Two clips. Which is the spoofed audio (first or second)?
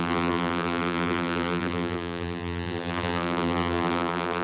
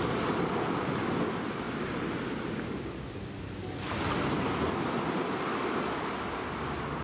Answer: first